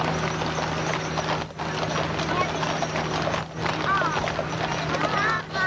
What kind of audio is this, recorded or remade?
recorded